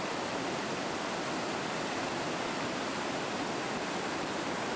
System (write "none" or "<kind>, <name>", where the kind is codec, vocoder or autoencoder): vocoder, BigVGAN v2